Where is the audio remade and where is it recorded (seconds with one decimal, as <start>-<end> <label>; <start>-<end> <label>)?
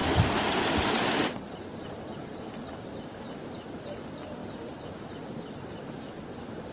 0.0-6.7 recorded